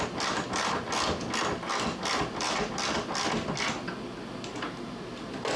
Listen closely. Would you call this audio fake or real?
real